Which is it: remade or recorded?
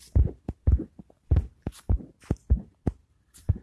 recorded